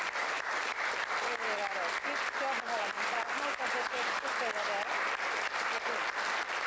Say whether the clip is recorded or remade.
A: recorded